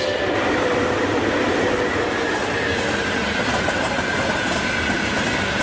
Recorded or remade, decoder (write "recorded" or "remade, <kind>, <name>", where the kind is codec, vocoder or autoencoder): recorded